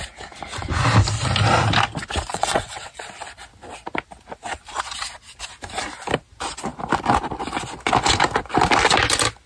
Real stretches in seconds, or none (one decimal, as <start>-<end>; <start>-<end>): 0.0-2.3; 3.0-9.5